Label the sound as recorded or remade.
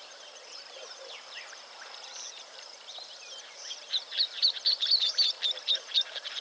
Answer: remade